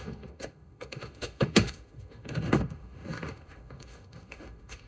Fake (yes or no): yes